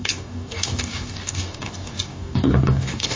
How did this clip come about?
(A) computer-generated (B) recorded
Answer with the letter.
A